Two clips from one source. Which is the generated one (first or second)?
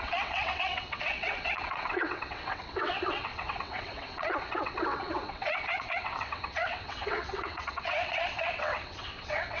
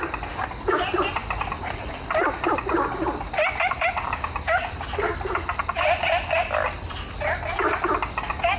first